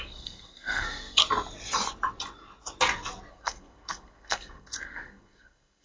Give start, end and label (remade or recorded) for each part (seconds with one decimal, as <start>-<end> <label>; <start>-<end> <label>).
0.0-1.2 remade; 1.2-3.3 recorded; 3.3-5.8 remade

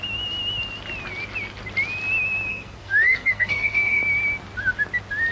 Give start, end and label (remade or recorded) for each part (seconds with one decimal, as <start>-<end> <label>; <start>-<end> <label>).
0.0-2.5 recorded; 2.5-4.0 remade; 4.0-5.3 recorded

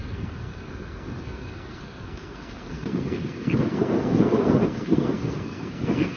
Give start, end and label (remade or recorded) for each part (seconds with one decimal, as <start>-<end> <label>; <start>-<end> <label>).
0.0-6.2 remade

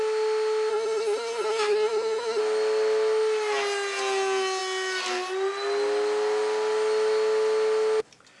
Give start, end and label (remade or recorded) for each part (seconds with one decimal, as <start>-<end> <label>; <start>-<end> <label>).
0.0-0.7 recorded; 0.7-2.4 remade; 2.4-8.4 recorded

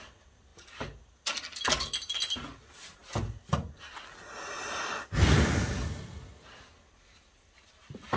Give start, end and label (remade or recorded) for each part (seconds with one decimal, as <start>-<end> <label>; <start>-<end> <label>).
0.0-8.2 recorded

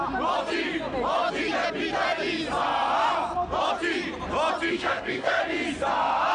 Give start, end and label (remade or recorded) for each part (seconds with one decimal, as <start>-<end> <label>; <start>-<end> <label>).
0.0-4.7 recorded; 4.7-5.4 remade; 5.4-6.3 recorded

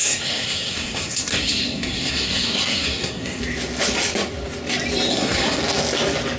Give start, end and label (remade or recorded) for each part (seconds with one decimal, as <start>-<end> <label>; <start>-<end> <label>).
0.0-3.4 remade; 3.4-5.1 recorded; 5.1-5.6 remade; 5.6-6.4 recorded

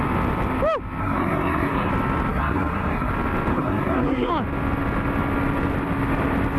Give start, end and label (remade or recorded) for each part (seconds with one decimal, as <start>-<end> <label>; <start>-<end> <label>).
0.0-1.0 recorded; 1.0-1.9 remade; 1.9-2.3 recorded; 2.3-3.1 remade; 3.1-3.5 recorded; 3.5-4.3 remade; 4.3-6.6 recorded